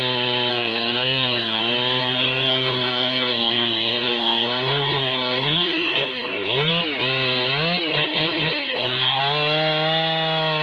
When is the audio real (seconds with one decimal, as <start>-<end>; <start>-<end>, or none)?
0.0-0.5; 1.6-2.0; 6.7-7.9; 9.2-10.6

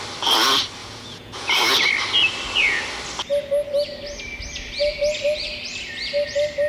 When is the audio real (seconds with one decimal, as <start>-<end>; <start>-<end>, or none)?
0.0-0.8; 1.7-6.7

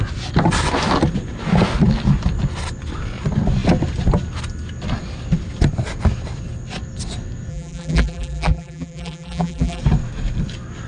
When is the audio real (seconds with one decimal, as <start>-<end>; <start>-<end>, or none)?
0.0-7.5; 9.8-10.9

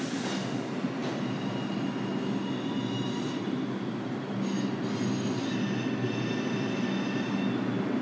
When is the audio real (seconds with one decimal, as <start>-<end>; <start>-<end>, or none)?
0.0-8.0

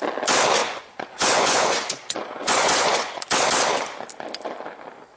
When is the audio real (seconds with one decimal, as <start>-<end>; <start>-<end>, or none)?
0.0-0.6; 3.2-5.2

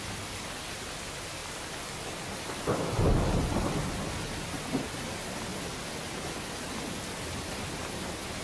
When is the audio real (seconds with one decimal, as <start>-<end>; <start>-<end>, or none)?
0.0-8.4

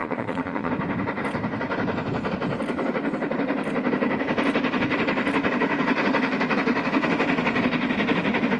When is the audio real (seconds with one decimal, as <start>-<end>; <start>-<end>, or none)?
0.7-8.6

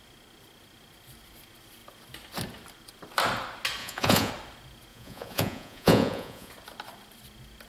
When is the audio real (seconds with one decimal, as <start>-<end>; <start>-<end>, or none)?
0.0-3.8; 4.3-4.9; 6.5-7.7